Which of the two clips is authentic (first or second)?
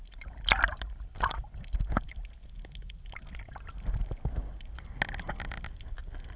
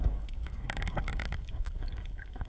first